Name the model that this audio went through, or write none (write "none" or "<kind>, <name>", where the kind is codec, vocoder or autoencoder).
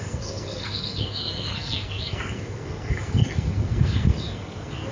codec, SNAC